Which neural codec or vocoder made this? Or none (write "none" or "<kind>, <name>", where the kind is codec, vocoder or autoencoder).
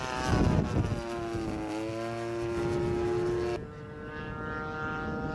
none